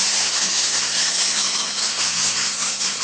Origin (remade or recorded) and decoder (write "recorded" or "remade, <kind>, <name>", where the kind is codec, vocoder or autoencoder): remade, codec, SNAC